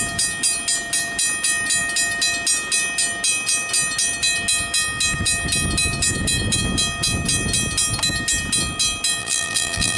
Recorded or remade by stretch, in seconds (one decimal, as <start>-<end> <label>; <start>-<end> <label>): 0.0-9.2 recorded; 9.2-10.0 remade